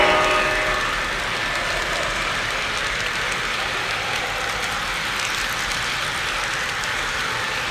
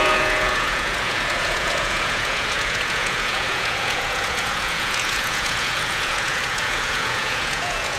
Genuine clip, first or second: first